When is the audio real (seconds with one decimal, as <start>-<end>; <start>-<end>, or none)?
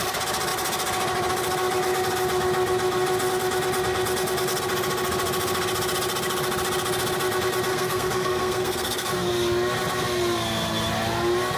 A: 0.0-7.7; 9.1-11.6